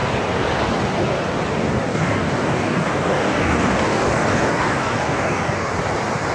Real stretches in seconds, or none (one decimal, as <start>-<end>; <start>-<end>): 0.0-1.9; 5.7-6.3